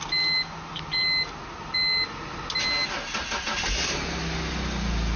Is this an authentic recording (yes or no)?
yes